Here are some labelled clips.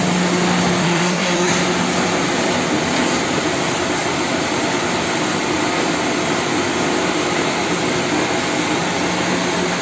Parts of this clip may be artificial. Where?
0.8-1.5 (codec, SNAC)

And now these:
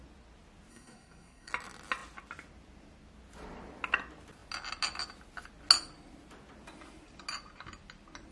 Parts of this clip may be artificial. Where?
0.7-1.5 (codec, SNAC)

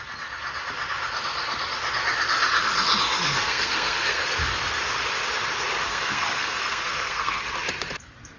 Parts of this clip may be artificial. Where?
3.3-4.2 (codec, SNAC); 5.9-7.4

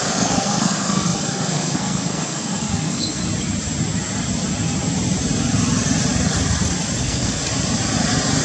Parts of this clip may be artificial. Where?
0.0-3.2 (codec, SNAC); 7.0-7.4